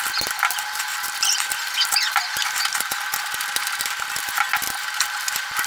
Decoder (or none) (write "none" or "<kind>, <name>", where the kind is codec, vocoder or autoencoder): none